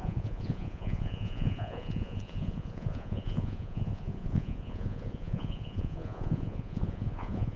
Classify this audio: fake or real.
fake